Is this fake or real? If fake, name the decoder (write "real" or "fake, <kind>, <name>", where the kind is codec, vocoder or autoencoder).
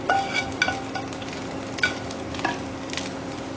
real